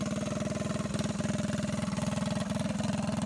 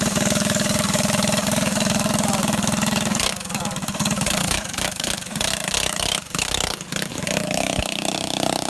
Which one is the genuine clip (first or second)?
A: first